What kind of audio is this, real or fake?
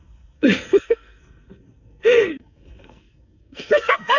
fake